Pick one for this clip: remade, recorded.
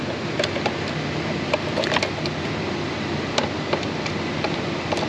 recorded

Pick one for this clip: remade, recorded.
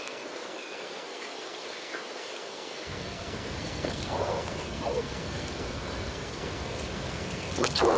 remade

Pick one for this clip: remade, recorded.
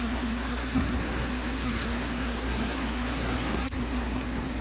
remade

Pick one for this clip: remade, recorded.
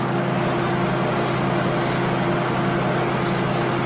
recorded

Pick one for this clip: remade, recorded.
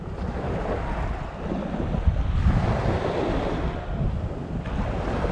recorded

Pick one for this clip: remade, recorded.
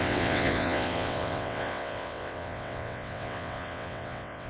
remade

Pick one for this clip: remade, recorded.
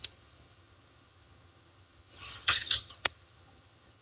remade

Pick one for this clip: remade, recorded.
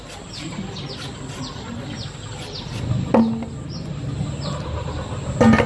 recorded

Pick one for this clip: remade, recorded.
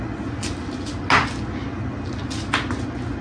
recorded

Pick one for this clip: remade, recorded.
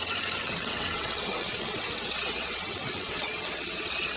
remade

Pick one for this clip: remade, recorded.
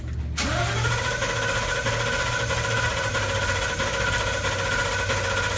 recorded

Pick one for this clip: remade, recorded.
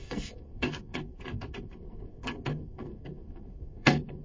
remade